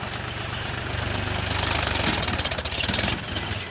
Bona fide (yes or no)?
yes